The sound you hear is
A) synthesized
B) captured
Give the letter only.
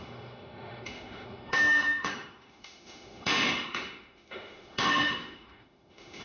A